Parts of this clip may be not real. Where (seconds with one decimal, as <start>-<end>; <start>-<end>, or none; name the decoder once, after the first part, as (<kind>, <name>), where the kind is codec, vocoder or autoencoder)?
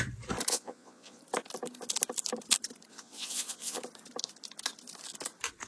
0.5-1.2 (vocoder, Vocos); 2.9-3.8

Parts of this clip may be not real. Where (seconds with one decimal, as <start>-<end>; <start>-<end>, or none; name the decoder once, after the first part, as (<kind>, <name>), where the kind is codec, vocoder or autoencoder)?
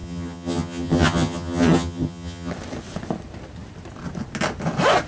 0.0-2.5 (vocoder, HiFi-GAN)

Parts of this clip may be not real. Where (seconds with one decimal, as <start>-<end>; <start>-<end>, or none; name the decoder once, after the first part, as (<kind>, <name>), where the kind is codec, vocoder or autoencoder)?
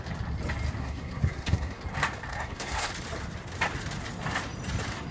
0.8-1.8 (codec, SNAC); 2.3-2.9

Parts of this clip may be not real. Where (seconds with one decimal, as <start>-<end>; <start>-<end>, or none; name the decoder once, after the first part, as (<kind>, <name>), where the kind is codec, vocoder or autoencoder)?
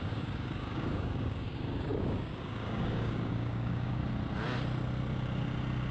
0.0-4.0 (codec, DAC)